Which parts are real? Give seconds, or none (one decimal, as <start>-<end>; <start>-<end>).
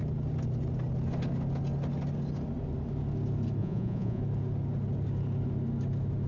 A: 0.0-3.6; 4.2-6.3